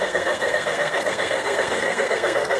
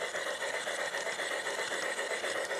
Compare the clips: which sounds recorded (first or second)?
second